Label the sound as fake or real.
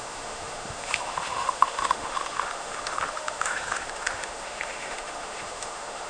fake